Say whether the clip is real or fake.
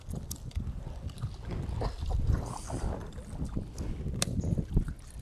real